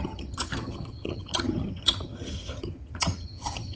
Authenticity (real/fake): fake